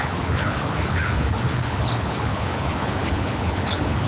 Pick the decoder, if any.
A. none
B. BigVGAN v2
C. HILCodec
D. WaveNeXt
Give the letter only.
C